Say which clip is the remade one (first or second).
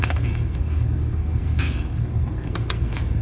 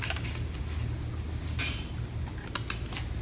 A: first